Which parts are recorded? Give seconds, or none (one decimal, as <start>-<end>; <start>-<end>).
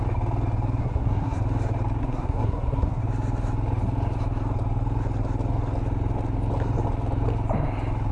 0.0-0.8; 1.4-2.0; 3.0-8.1